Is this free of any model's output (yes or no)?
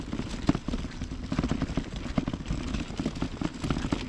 yes